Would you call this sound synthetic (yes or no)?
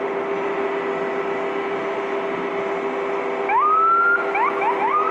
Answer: no